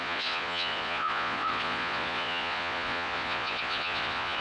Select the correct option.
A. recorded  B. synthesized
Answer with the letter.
B